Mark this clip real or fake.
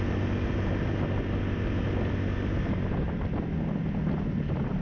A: real